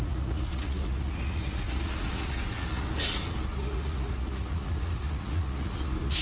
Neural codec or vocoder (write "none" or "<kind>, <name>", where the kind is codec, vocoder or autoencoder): vocoder, Vocos